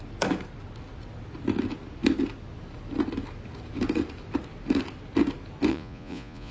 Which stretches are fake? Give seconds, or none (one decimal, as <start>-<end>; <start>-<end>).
5.7-6.5